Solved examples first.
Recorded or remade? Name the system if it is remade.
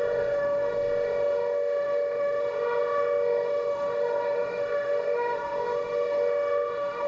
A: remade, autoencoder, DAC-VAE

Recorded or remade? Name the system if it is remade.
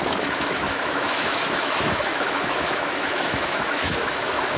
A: remade, autoencoder, DAC-VAE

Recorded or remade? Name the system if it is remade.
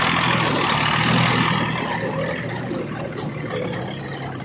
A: recorded